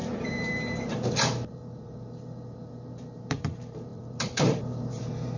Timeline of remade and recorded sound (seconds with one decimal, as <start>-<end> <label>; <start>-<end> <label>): 0.0-5.4 remade